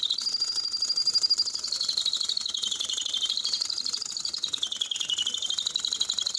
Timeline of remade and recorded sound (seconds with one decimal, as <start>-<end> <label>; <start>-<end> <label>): 0.0-1.0 recorded; 1.0-4.1 remade; 4.1-6.4 recorded

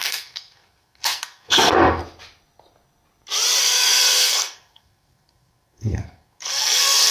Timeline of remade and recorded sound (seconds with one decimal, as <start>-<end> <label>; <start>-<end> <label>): 0.0-2.0 remade; 2.0-3.6 recorded; 3.6-7.1 remade

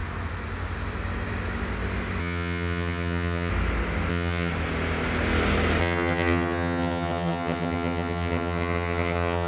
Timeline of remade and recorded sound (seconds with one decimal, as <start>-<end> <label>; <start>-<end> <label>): 0.0-2.2 recorded; 2.2-3.5 remade; 3.5-4.1 recorded; 4.1-4.5 remade; 4.5-5.8 recorded; 5.8-9.5 remade

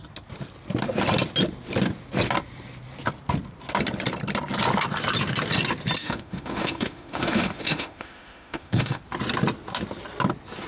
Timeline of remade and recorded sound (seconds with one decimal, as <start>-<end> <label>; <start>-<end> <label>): 0.0-6.0 recorded; 6.0-9.0 remade; 9.0-10.7 recorded

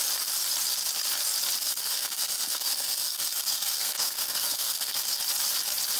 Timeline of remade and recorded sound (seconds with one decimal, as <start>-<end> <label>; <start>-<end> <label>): 0.0-1.6 recorded; 1.6-5.2 remade; 5.2-6.0 recorded

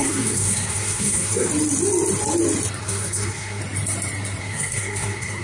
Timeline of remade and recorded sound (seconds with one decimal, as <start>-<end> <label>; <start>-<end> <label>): 0.0-1.5 remade; 1.5-2.8 recorded; 2.8-3.6 remade; 3.6-4.4 recorded; 4.4-5.4 remade